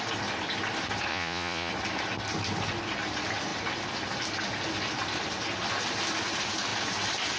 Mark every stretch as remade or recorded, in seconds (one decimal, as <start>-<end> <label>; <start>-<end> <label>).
0.0-1.1 recorded; 1.1-1.7 remade; 1.7-7.4 recorded